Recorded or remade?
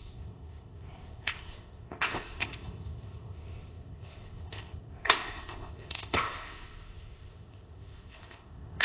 remade